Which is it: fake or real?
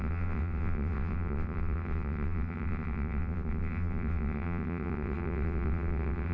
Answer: fake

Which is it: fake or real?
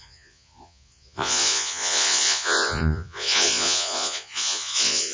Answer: fake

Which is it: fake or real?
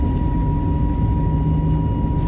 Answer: real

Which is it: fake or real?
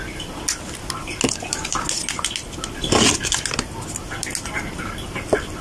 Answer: real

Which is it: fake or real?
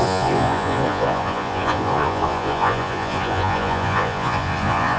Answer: fake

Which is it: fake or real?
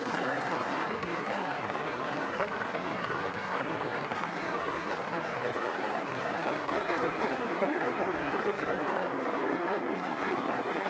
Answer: fake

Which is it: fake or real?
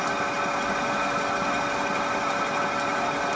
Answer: real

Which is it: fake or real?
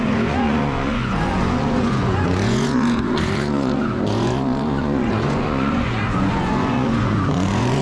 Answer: fake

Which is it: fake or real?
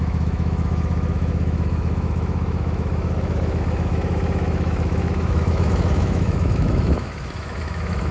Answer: fake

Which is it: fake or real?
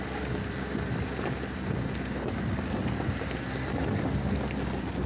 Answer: real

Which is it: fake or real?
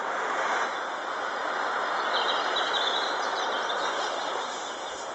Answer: real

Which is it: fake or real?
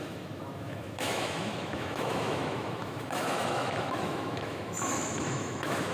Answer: fake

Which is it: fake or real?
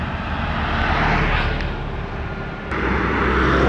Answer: real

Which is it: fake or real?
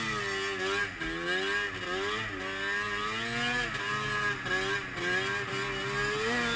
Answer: real